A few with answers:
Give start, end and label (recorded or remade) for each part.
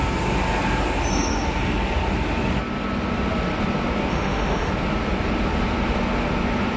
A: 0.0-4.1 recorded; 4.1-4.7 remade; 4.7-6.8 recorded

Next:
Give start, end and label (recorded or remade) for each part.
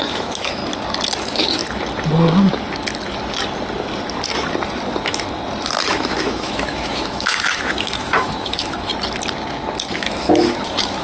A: 0.0-0.6 remade; 0.6-1.2 recorded; 1.2-1.6 remade; 1.6-5.7 recorded; 5.7-8.9 remade; 8.9-9.9 recorded; 9.9-11.0 remade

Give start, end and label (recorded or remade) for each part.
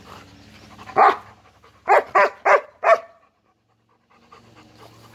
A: 0.0-5.1 recorded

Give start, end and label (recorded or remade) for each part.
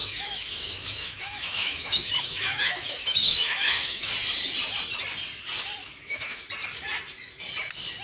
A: 0.0-4.1 remade; 4.1-5.8 recorded; 5.8-6.4 remade; 6.4-8.0 recorded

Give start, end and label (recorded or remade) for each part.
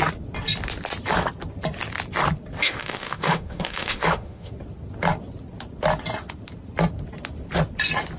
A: 0.0-2.6 recorded; 2.6-4.5 remade; 4.5-8.2 recorded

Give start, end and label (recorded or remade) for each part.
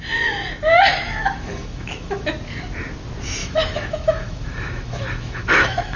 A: 0.0-0.9 recorded; 0.9-2.3 remade; 2.3-3.4 recorded; 3.4-6.0 remade